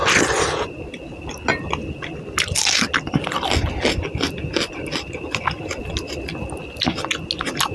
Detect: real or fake real